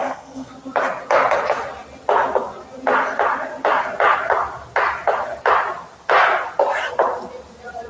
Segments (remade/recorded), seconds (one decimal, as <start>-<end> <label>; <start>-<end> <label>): 0.0-0.5 remade; 0.5-7.9 recorded